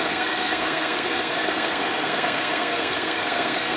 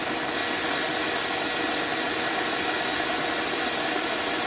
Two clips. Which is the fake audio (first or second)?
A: first